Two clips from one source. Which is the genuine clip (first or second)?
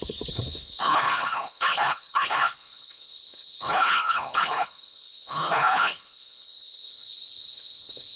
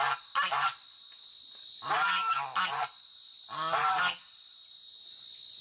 second